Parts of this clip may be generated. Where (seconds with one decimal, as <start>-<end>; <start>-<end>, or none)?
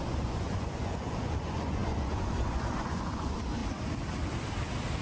0.0-3.6